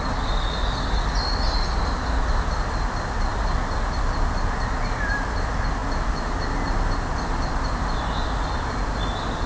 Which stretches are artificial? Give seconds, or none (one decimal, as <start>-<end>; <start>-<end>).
none

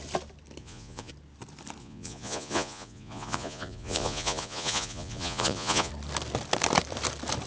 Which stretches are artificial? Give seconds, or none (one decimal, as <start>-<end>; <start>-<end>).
0.6-1.1; 1.8-5.9